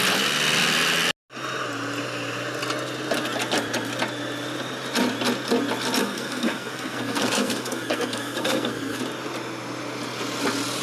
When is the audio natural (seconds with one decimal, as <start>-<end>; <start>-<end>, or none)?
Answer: 0.0-6.0; 9.0-10.8